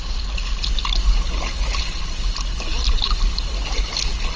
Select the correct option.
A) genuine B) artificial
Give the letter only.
A